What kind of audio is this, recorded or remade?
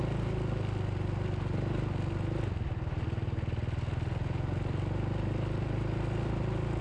recorded